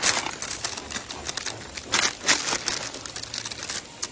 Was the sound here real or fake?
real